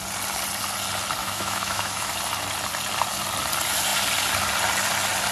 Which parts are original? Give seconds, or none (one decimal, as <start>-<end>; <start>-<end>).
0.0-1.2; 2.1-5.3